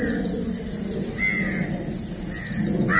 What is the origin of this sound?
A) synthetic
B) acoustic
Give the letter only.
B